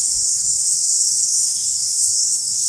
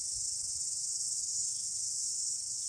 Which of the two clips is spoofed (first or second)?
first